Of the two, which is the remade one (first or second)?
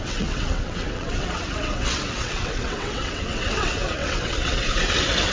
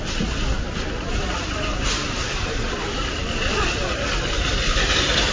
first